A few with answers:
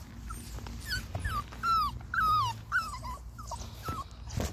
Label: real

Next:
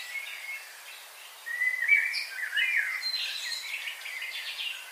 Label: real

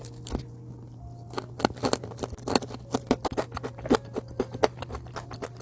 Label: real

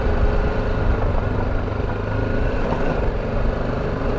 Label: real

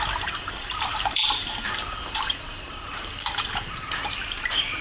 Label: fake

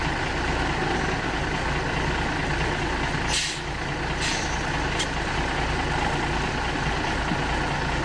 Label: real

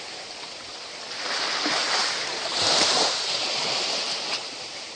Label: fake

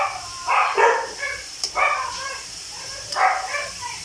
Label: fake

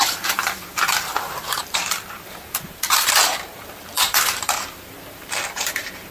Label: fake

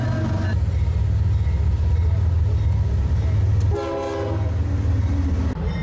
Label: real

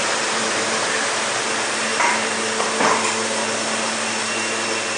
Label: real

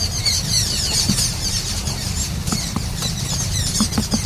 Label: fake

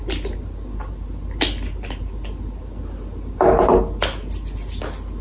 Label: real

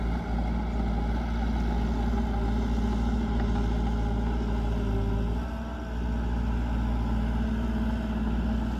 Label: real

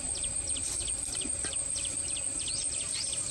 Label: fake